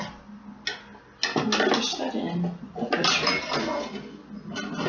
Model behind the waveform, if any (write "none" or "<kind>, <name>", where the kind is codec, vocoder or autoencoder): none